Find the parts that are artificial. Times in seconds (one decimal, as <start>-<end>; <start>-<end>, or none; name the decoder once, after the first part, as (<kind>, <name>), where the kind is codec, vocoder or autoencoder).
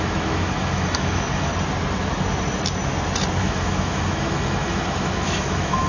0.0-1.5 (autoencoder, DAC-VAE); 3.4-5.9